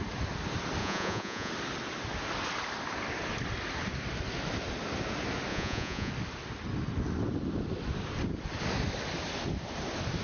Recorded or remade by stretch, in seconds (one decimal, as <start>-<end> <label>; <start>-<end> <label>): 0.0-0.8 recorded; 0.8-1.5 remade; 1.5-5.5 recorded; 5.5-6.1 remade; 6.1-10.2 recorded

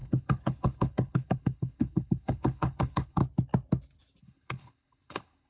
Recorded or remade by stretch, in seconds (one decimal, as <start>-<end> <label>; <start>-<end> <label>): 0.0-3.2 remade; 3.2-4.2 recorded; 4.2-5.5 remade